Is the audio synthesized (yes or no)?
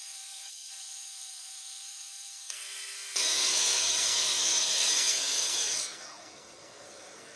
yes